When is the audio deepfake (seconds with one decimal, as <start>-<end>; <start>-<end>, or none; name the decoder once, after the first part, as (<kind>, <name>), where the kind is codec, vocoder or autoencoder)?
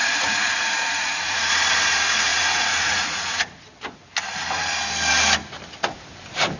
0.0-1.5 (vocoder, Vocos); 2.3-3.6